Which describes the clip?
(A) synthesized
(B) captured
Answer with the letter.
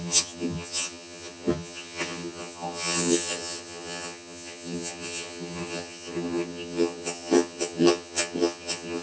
A